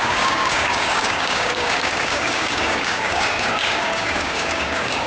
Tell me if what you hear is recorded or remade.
remade